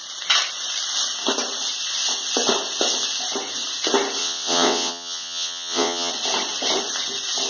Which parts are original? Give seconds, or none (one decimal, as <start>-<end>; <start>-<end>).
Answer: 0.0-4.2; 6.1-7.5